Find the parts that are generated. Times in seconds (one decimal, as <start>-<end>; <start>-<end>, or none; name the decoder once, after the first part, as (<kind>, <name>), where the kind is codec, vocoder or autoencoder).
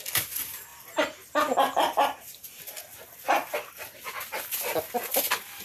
none